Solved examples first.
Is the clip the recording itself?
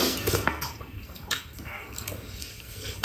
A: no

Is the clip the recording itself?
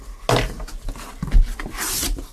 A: yes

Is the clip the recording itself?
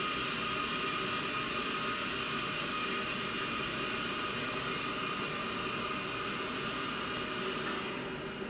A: yes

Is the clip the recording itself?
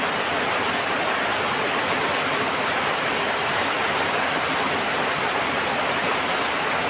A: yes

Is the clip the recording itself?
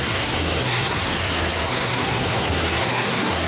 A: no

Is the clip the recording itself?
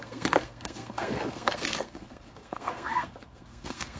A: no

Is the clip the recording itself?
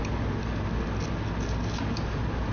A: yes